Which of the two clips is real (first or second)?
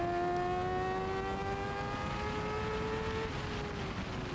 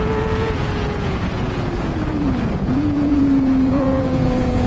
first